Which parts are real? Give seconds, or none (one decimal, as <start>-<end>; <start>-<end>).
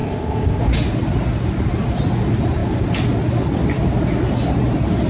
0.6-5.1